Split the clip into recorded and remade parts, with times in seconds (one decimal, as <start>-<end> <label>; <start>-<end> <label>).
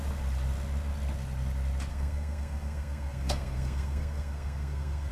0.0-1.9 recorded; 1.9-5.1 remade